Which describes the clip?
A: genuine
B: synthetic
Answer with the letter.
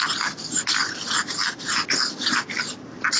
A